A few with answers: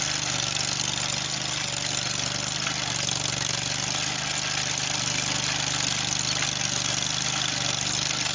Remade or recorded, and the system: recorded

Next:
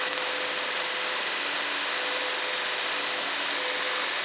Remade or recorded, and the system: recorded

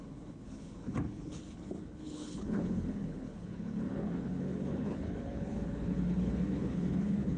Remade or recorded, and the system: remade, codec, HILCodec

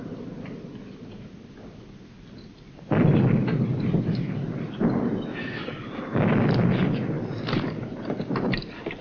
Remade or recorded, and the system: recorded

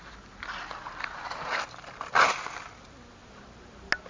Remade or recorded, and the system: recorded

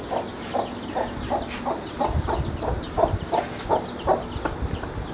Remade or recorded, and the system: recorded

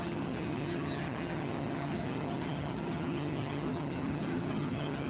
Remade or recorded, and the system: remade, vocoder, HiFi-GAN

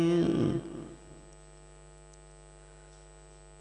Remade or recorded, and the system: recorded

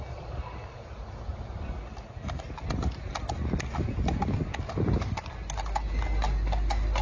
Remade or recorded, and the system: recorded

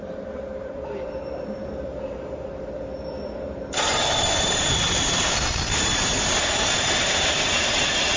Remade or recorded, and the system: remade, vocoder, BigVGAN v2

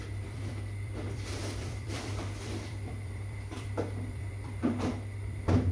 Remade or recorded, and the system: remade, vocoder, BigVGAN v2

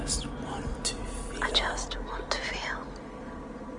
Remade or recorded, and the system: recorded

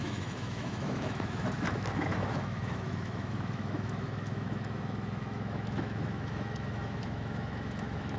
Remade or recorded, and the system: remade, autoencoder, DAC-VAE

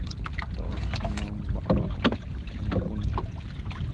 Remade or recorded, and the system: recorded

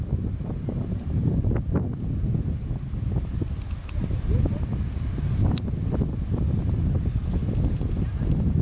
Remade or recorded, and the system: recorded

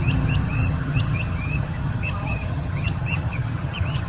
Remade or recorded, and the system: remade, vocoder, HiFi-GAN